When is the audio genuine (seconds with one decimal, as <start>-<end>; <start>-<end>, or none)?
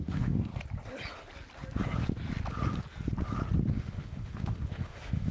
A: 0.5-3.7